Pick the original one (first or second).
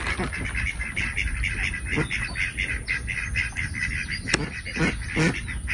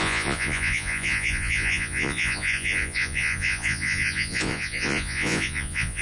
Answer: first